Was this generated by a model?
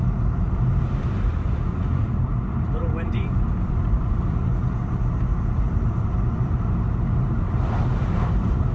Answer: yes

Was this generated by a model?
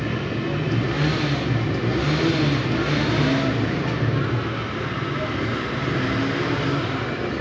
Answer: no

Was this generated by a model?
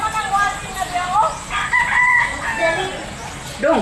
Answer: no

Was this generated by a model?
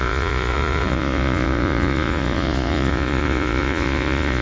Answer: yes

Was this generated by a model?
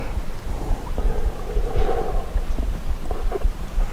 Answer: yes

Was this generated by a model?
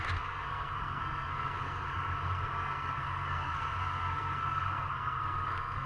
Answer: yes